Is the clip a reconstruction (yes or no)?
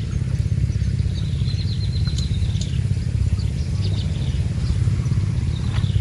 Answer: no